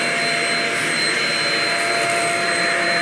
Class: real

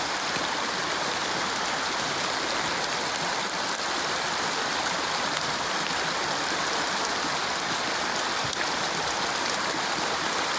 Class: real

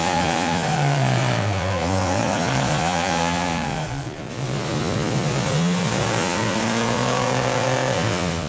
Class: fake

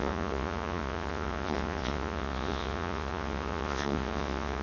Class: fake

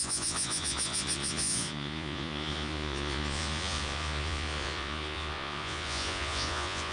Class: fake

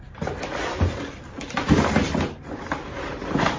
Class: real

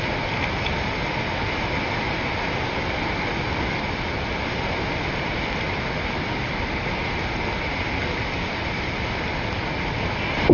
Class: real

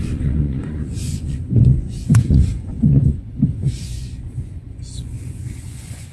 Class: fake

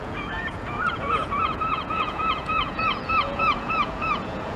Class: fake